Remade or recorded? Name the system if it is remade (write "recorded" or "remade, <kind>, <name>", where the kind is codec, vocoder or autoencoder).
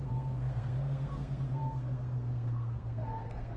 remade, codec, SNAC